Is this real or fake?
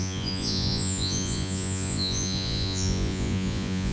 fake